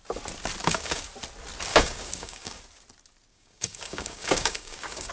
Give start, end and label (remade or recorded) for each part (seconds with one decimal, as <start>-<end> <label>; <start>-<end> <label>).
0.0-0.6 recorded; 0.6-1.1 remade; 1.1-1.7 recorded; 1.7-2.6 remade; 2.6-3.3 recorded; 3.3-5.1 remade